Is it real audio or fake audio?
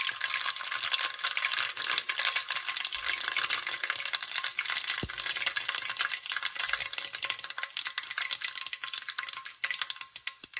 real